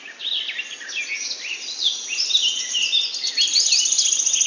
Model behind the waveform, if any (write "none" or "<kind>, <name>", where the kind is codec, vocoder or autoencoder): none